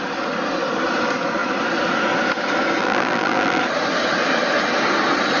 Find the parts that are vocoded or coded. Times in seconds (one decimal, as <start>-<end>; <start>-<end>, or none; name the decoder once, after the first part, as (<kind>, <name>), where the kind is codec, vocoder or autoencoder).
2.8-3.6 (vocoder, BigVGAN v2)